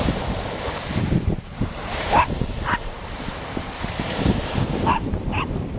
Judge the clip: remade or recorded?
remade